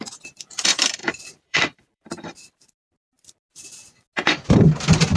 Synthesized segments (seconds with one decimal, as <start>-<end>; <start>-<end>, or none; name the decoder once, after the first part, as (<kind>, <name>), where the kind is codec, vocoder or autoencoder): 1.0-3.4 (vocoder, BigVGAN v2)